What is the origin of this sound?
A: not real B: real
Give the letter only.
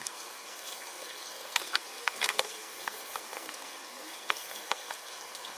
A